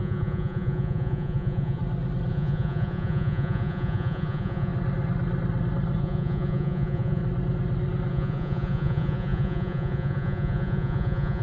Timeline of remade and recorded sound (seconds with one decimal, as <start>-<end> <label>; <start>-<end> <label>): 0.0-1.8 remade; 1.8-2.3 recorded; 2.3-4.7 remade; 4.7-6.0 recorded; 6.0-7.2 remade; 7.2-8.1 recorded; 8.1-11.4 remade